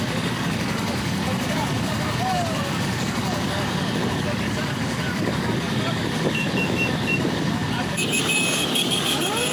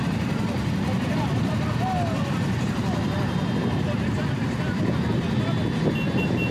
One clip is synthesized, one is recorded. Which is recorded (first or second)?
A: second